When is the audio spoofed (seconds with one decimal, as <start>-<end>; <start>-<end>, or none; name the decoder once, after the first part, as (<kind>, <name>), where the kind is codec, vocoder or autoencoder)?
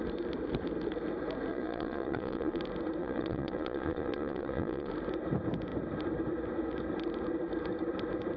1.5-2.6 (vocoder, Vocos); 3.0-4.9